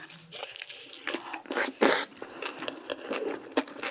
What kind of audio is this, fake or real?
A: real